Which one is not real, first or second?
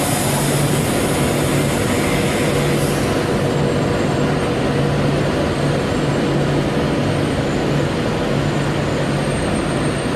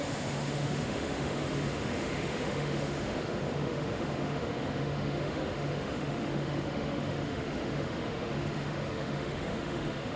second